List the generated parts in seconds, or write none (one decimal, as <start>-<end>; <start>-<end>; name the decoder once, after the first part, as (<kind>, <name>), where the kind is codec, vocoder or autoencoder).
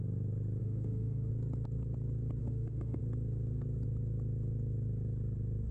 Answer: 0.6-1.3 (autoencoder, DAC-VAE); 2.4-3.0